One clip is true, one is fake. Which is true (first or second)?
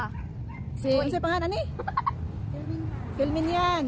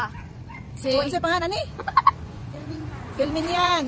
first